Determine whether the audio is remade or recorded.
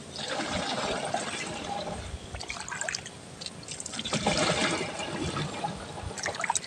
recorded